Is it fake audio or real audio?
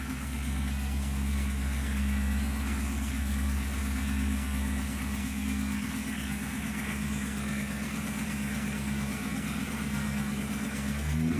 fake